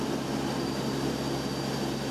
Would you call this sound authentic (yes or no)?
yes